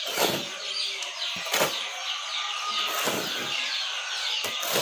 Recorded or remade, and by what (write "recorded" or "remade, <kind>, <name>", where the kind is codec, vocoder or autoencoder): recorded